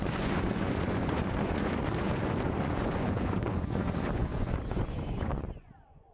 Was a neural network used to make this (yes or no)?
yes